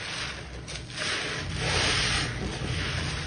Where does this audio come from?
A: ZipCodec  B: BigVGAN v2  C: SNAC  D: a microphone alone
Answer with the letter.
D